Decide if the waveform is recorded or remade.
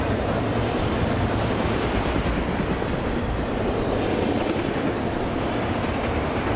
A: recorded